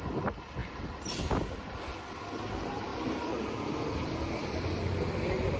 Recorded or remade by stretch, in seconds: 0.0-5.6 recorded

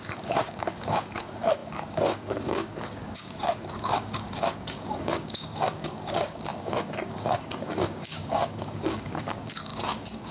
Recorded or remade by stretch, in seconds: 0.0-10.3 remade

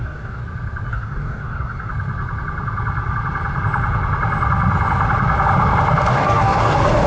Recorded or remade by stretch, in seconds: 0.0-0.4 remade; 0.4-0.9 recorded; 0.9-1.9 remade; 1.9-6.1 recorded; 6.1-7.1 remade

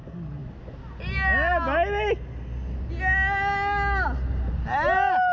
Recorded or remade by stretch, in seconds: 0.0-5.3 recorded

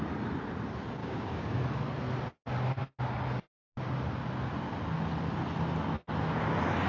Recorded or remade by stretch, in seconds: 0.0-1.0 recorded; 1.0-1.6 remade; 1.6-6.9 recorded

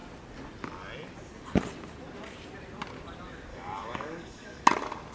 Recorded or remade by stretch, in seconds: 0.0-3.5 recorded; 3.5-4.6 remade; 4.6-5.1 recorded

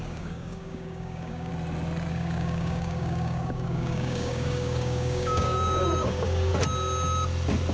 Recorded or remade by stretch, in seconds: 0.0-1.5 remade; 1.5-2.1 recorded; 2.1-6.5 remade; 6.5-7.7 recorded